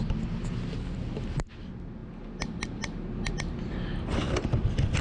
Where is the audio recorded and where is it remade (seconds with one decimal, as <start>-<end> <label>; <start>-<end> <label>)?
0.0-5.0 recorded